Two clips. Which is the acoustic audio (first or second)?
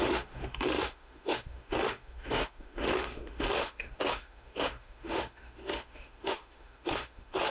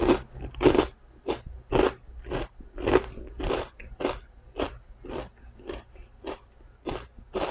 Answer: second